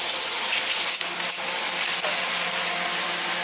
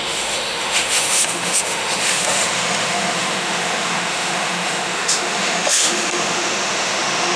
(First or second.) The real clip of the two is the first